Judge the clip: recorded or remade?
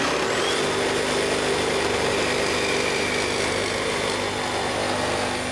recorded